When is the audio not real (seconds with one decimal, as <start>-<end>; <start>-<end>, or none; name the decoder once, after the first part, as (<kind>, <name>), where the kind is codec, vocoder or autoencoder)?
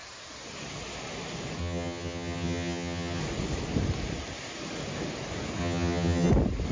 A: 1.6-3.2 (vocoder, HiFi-GAN); 5.6-6.3